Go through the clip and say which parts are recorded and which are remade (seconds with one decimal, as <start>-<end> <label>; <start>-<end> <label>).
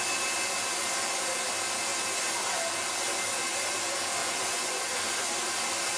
0.0-4.2 recorded; 4.2-4.8 remade; 4.8-6.0 recorded